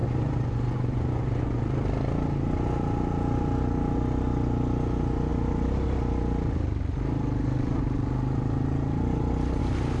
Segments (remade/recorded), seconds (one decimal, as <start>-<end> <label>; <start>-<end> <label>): 0.0-1.6 remade; 1.6-10.0 recorded